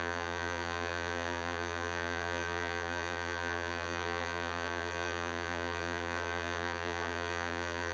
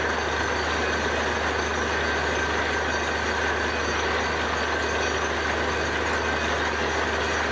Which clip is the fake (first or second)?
first